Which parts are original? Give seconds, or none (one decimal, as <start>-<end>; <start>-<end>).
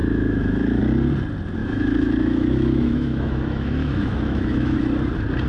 0.8-1.6; 4.8-5.5